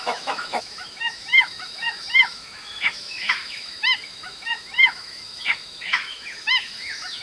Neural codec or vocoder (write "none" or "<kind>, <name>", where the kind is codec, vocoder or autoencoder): autoencoder, DAC-VAE